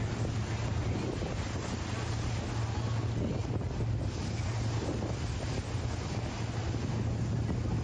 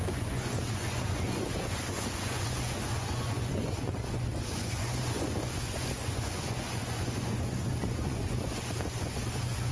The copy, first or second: second